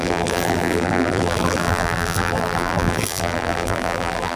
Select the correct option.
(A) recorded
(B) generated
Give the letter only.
B